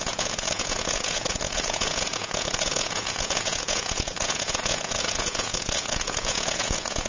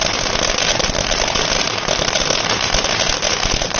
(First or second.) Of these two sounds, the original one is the second